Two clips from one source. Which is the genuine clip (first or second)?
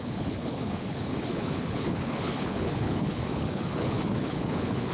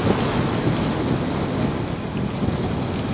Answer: second